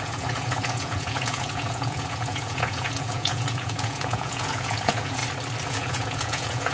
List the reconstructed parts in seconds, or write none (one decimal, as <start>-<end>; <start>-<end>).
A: 0.0-5.2; 5.7-6.7